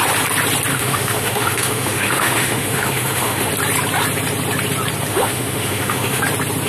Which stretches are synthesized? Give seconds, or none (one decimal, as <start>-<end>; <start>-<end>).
0.7-3.5; 5.1-6.2